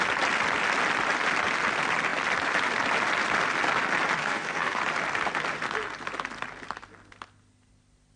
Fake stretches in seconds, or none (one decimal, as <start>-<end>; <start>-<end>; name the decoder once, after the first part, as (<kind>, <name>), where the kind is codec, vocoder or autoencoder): 4.2-4.8 (codec, SNAC)